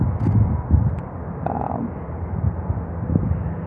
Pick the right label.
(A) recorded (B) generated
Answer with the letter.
A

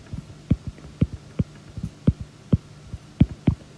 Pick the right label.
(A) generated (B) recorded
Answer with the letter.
B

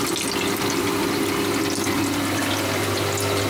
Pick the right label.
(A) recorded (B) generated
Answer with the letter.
A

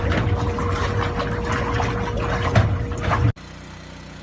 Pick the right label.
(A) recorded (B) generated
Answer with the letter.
A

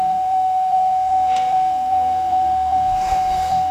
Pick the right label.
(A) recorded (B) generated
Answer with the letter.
B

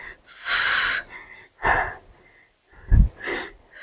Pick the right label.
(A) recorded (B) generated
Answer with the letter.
B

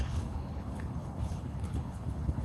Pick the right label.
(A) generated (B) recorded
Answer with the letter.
A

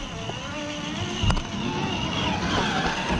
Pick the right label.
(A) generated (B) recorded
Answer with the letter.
B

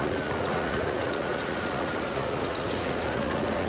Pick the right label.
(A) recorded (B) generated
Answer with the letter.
B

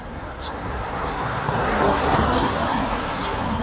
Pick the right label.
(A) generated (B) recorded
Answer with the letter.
A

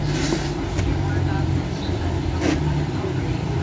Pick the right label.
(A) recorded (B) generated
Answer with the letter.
B